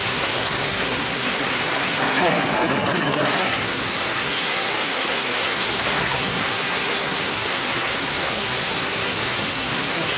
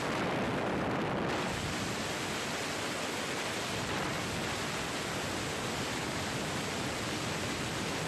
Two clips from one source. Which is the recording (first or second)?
second